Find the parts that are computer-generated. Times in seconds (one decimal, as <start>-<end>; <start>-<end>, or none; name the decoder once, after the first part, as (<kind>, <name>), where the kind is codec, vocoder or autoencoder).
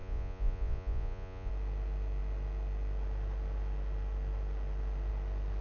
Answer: 0.0-1.5 (vocoder, Vocos)